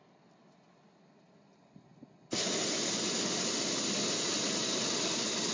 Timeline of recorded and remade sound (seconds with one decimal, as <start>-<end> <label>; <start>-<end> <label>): 0.0-5.5 recorded